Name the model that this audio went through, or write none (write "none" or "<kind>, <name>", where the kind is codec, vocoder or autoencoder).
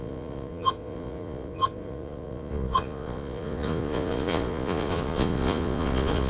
vocoder, Vocos